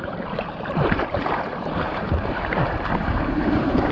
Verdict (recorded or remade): remade